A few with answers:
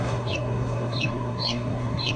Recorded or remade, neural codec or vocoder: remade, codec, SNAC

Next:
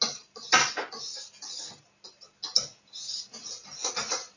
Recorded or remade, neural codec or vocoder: recorded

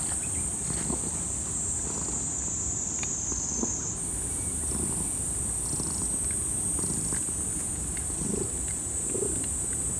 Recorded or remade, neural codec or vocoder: recorded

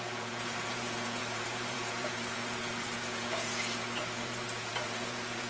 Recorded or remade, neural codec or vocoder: remade, vocoder, Vocos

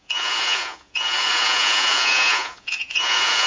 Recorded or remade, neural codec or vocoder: remade, vocoder, Vocos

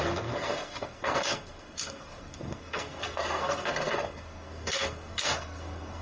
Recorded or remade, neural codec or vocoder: remade, codec, SNAC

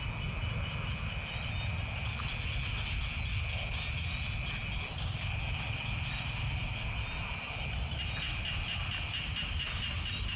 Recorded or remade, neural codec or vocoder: recorded